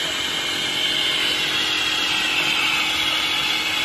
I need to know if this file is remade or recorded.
recorded